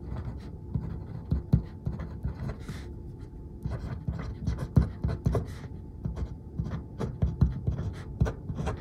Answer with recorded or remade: recorded